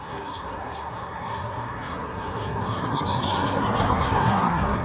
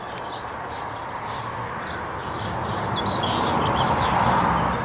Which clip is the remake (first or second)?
first